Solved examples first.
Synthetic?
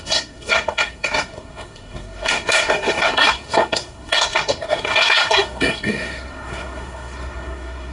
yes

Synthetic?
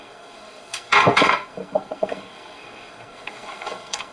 yes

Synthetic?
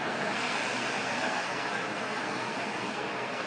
yes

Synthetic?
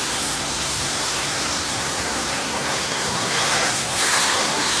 yes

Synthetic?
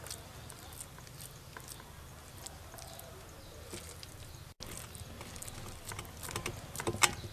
no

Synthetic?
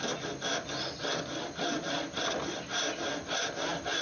no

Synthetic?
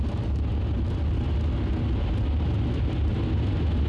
no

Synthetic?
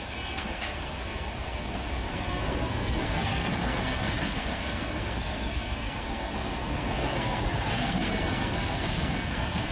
yes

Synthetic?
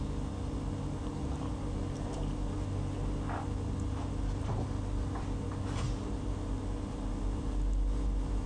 no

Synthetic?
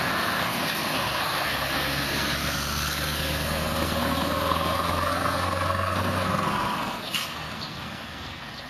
yes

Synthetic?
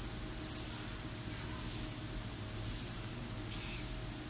no